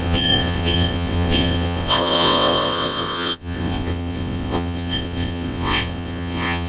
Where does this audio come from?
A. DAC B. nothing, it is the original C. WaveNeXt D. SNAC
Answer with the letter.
C